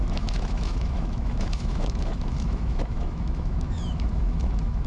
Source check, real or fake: fake